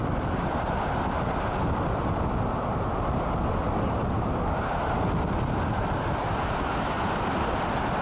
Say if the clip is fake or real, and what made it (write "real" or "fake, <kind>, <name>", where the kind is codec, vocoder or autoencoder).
real